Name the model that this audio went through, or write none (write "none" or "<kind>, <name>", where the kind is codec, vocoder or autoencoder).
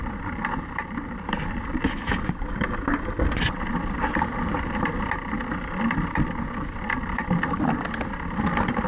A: none